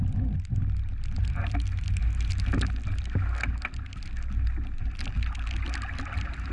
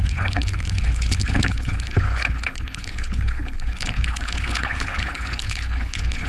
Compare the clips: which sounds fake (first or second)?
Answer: second